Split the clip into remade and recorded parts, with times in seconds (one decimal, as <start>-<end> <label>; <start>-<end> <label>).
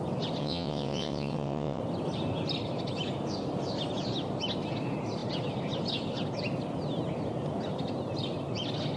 0.0-0.4 recorded; 0.4-1.8 remade; 1.8-9.0 recorded